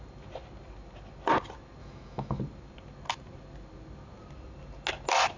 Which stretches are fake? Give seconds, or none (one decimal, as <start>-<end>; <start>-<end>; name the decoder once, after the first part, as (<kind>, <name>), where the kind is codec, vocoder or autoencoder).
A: 1.8-2.4 (autoencoder, DAC-VAE)